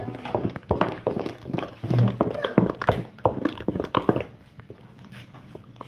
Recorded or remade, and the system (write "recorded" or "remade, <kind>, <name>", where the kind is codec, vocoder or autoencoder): remade, codec, DAC